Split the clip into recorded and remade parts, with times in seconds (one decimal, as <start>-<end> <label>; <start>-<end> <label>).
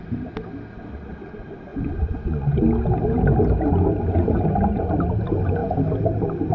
0.0-1.7 recorded; 1.7-2.6 remade; 2.6-6.5 recorded